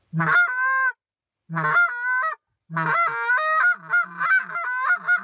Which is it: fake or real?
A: real